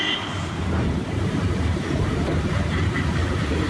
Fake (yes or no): yes